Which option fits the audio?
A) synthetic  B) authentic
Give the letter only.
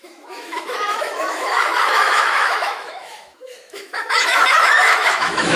A